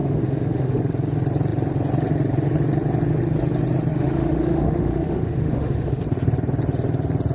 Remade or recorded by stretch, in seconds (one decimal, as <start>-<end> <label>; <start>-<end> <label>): 0.0-0.8 remade; 0.8-3.9 recorded; 3.9-6.0 remade; 6.0-7.3 recorded